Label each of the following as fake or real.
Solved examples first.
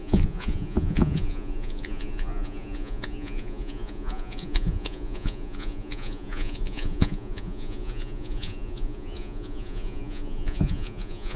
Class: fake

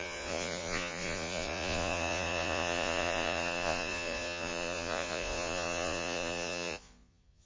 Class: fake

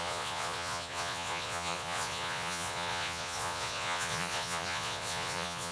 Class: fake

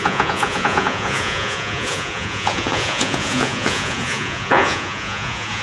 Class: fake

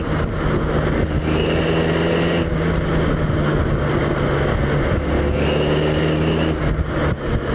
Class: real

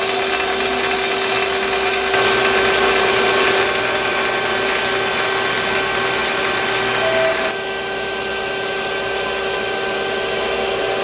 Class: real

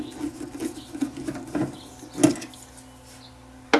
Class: real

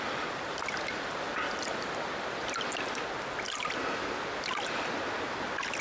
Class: real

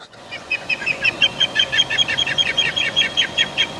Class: fake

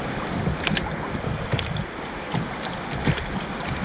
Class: real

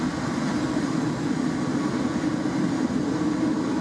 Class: real